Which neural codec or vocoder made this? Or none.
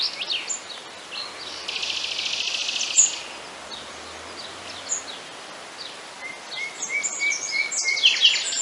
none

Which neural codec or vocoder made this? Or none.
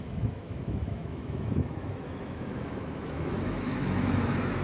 autoencoder, DAC-VAE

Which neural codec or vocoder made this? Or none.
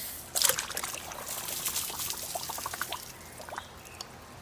none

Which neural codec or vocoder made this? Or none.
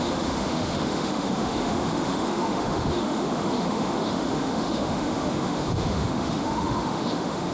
autoencoder, DAC-VAE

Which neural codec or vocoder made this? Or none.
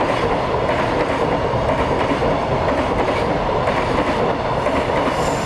none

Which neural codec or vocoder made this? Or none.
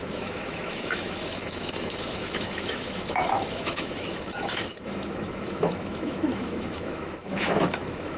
autoencoder, DAC-VAE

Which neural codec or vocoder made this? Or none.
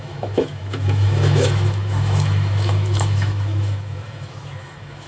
autoencoder, DAC-VAE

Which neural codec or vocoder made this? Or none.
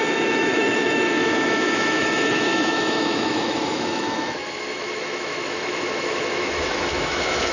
autoencoder, DAC-VAE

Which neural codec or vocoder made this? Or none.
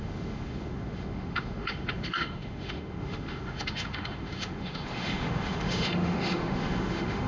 autoencoder, DAC-VAE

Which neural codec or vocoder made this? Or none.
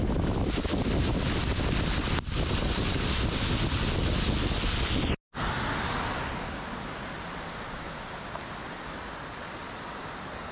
none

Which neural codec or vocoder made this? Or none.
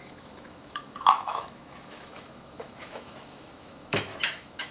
autoencoder, DAC-VAE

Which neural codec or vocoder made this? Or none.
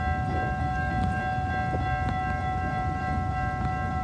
none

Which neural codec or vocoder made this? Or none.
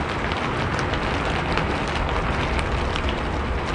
none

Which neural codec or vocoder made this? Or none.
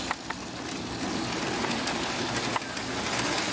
none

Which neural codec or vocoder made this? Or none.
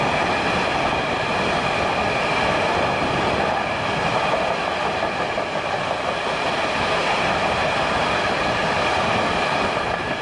none